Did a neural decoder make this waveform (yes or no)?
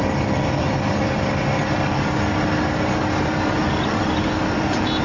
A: no